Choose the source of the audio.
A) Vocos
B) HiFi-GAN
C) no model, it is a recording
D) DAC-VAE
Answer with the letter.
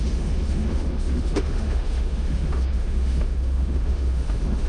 D